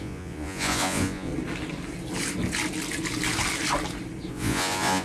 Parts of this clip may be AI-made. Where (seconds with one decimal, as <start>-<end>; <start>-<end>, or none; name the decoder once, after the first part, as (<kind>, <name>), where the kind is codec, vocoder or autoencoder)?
0.0-1.3 (vocoder, Vocos); 4.3-5.0

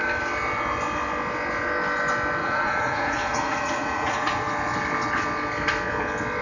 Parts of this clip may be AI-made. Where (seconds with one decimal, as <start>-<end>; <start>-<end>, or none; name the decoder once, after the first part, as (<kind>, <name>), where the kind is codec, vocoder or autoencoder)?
2.4-4.4 (vocoder, Vocos)

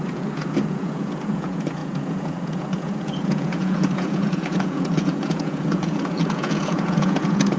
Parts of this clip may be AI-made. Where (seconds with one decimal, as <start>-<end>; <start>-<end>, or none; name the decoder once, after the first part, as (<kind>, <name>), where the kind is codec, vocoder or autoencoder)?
0.0-7.6 (vocoder, Vocos)

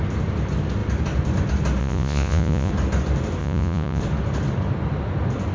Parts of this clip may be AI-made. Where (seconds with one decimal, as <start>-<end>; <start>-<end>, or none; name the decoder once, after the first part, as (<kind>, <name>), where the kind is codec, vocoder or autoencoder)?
1.8-2.7 (vocoder, Vocos); 3.4-4.0

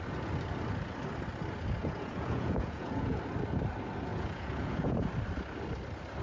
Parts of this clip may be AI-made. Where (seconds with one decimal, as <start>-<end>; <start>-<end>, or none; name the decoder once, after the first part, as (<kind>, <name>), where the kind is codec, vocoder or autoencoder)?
1.8-3.2 (vocoder, Vocos); 4.1-5.1

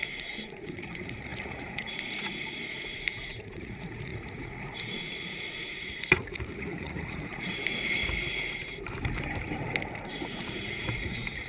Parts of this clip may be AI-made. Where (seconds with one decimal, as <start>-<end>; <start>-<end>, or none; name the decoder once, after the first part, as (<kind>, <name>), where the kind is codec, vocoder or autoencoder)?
0.0-8.0 (vocoder, Vocos); 10.1-11.5

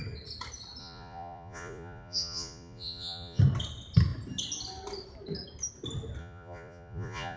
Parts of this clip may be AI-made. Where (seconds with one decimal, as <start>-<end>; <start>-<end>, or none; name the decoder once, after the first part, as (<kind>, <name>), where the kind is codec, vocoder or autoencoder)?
0.8-3.4 (vocoder, Vocos); 6.2-7.4

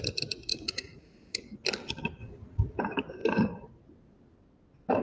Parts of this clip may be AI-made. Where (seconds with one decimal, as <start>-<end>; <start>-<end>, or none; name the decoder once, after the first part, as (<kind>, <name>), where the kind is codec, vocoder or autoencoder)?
0.5-1.4 (vocoder, Vocos)